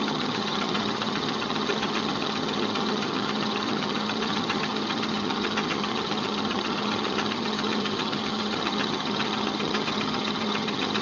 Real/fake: fake